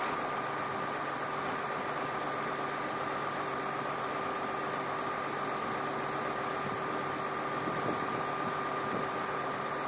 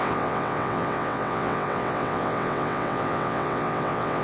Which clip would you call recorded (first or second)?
first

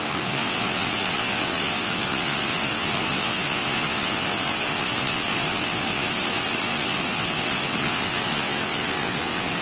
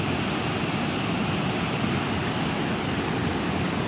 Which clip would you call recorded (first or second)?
second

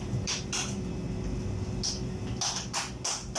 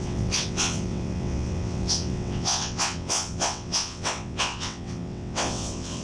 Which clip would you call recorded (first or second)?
first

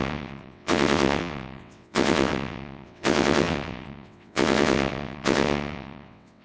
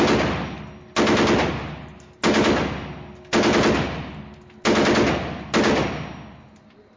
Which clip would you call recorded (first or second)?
second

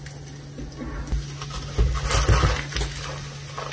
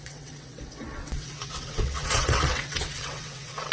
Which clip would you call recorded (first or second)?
first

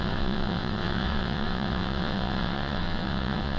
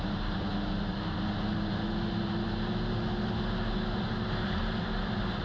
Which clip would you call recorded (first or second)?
second